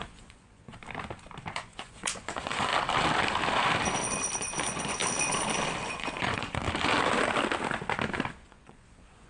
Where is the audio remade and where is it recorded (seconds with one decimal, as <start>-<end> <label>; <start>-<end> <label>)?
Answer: 0.0-0.7 remade; 0.7-1.5 recorded; 1.5-2.7 remade; 2.7-4.6 recorded; 4.6-5.0 remade; 5.0-5.8 recorded; 5.8-6.6 remade; 6.6-8.3 recorded; 8.3-9.3 remade